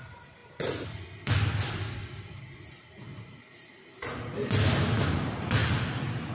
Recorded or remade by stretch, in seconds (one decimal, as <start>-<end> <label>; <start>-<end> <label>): 0.0-6.3 recorded